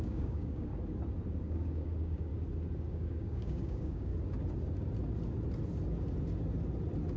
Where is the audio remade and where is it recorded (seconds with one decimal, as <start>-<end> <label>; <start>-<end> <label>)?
0.0-0.7 remade; 0.7-1.4 recorded; 1.4-2.3 remade; 2.3-2.9 recorded; 2.9-4.1 remade; 4.1-7.2 recorded